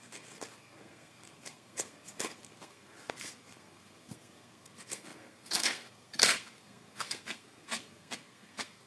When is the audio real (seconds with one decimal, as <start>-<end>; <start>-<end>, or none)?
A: none